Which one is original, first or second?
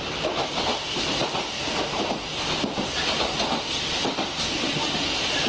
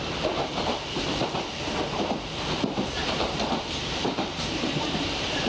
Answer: first